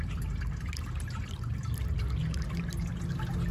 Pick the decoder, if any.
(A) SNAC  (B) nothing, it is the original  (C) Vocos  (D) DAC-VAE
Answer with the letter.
B